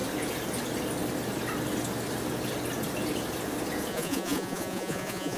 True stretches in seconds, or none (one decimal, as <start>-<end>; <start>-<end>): 0.0-3.9